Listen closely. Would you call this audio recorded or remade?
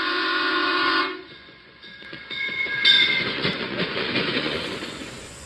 remade